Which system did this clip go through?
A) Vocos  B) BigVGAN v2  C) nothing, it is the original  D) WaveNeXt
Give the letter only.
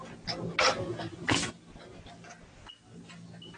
C